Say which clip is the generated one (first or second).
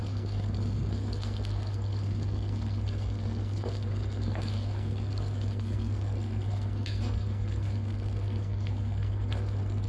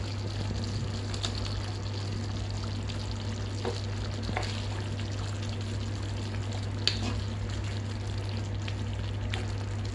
first